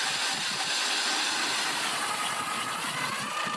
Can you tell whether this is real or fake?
real